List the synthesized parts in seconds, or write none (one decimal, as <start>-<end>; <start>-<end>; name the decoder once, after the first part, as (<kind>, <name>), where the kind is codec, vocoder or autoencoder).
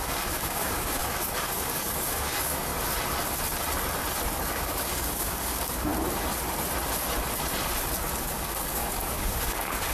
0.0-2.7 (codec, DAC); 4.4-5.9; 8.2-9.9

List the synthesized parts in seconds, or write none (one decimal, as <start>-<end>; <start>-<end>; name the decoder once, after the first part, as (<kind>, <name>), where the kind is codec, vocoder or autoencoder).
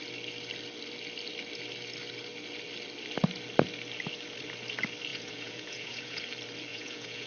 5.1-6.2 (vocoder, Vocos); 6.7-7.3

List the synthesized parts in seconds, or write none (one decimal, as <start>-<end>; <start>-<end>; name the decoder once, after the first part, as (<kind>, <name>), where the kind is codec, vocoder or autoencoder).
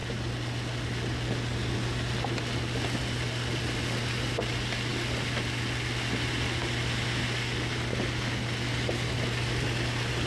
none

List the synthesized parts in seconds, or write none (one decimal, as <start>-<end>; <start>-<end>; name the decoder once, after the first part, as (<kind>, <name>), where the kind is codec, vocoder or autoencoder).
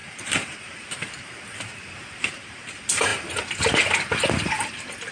0.0-1.1 (vocoder, BigVGAN v2)